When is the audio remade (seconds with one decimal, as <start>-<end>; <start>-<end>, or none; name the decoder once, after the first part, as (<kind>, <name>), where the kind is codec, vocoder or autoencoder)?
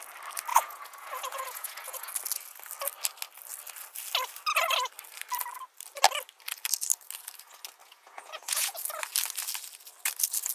0.5-2.1 (vocoder, Vocos); 7.8-8.8